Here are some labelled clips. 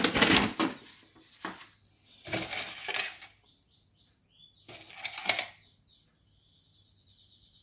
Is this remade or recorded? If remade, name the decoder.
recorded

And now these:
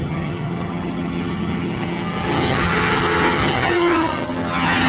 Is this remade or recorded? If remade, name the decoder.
remade, vocoder, HiFi-GAN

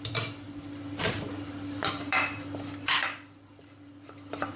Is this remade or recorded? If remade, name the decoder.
remade, vocoder, BigVGAN v2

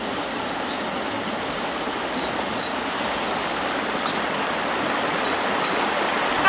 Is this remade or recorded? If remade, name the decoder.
recorded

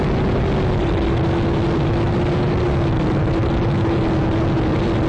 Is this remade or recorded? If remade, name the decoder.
recorded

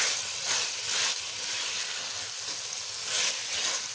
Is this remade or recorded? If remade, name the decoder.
recorded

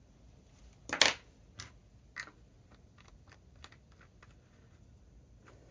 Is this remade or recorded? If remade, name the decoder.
recorded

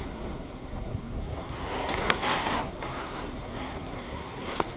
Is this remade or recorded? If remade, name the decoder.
remade, codec, SNAC